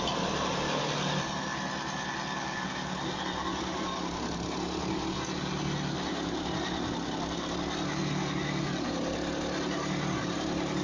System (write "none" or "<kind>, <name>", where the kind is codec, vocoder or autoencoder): none